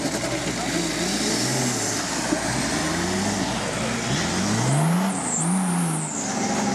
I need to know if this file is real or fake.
real